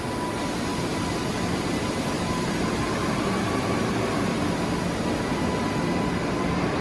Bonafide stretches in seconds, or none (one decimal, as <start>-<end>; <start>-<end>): 0.0-0.7; 4.8-6.8